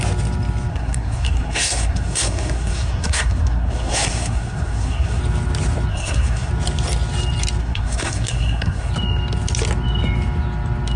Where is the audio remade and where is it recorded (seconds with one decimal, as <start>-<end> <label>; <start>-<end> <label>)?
0.0-0.7 recorded; 0.7-5.2 remade; 5.2-5.9 recorded; 5.9-6.5 remade; 6.5-7.6 recorded; 7.6-8.9 remade; 8.9-11.0 recorded